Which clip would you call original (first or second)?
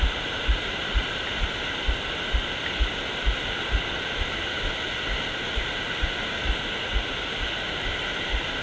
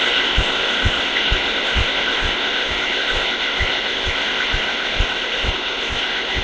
first